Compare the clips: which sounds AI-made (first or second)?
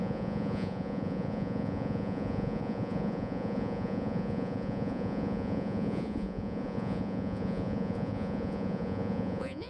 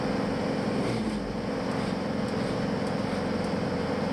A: first